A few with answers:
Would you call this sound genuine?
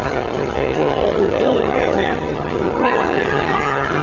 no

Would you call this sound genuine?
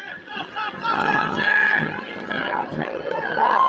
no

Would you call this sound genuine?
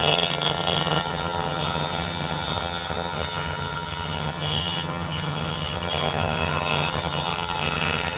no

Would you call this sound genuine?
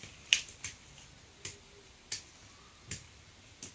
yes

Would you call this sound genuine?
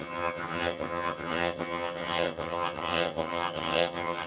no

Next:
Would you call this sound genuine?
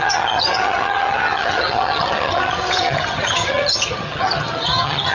no